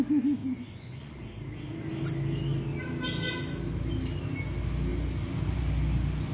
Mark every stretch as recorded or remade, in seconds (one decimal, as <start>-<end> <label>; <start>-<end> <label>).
0.0-0.4 recorded; 0.4-1.2 remade; 1.2-6.3 recorded